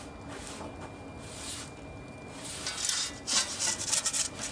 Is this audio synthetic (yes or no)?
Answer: no